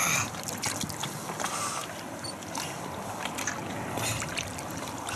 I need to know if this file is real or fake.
real